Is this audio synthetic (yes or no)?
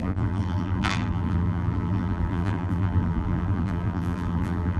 yes